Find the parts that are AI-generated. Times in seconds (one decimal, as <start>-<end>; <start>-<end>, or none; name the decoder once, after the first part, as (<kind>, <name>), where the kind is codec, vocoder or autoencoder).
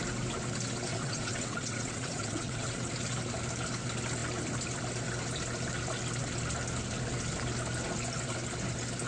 0.9-2.9 (vocoder, WaveNeXt)